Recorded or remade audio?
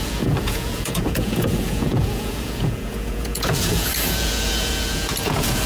remade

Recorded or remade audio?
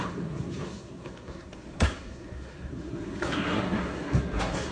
remade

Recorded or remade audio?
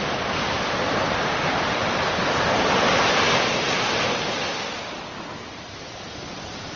recorded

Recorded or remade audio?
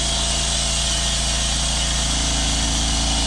recorded